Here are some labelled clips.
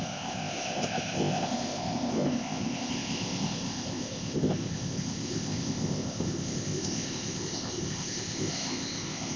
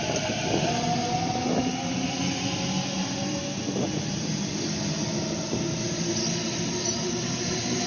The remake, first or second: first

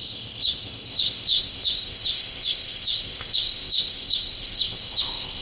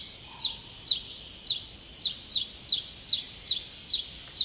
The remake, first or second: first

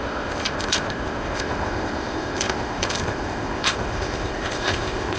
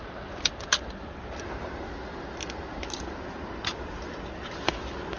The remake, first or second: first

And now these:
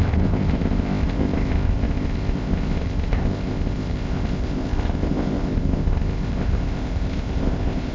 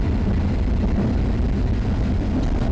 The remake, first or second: first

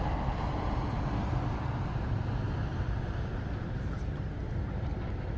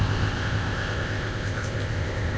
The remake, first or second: second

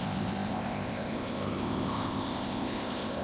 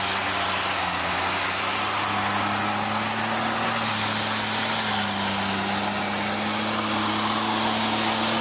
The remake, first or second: first